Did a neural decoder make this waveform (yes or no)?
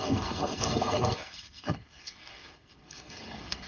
yes